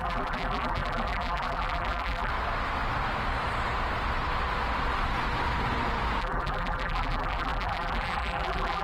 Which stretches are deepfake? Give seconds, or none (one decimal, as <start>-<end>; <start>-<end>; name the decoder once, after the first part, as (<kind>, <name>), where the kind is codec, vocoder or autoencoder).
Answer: 0.0-2.3 (vocoder, BigVGAN v2); 6.2-8.8